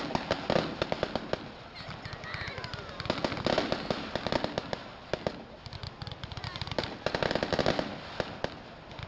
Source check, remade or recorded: recorded